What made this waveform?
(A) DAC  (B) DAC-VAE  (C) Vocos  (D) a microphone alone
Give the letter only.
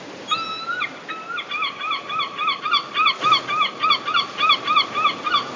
D